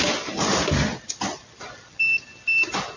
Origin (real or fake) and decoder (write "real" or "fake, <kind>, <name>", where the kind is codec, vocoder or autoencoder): real